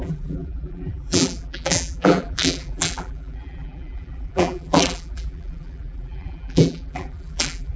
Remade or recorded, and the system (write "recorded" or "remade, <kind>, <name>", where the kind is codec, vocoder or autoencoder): remade, vocoder, BigVGAN v2